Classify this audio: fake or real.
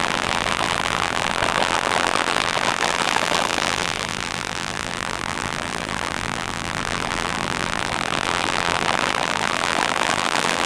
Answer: fake